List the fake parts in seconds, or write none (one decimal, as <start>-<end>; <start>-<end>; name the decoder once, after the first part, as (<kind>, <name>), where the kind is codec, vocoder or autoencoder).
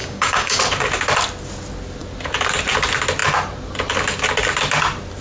0.0-0.6 (codec, DAC)